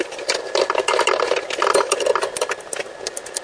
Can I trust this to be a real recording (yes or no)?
yes